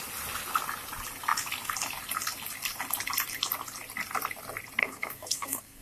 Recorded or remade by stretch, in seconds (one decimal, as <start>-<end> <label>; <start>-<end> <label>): 0.0-4.8 recorded; 4.8-5.8 remade